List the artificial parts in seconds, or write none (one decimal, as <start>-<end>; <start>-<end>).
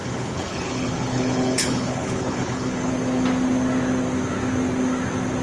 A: 0.0-2.9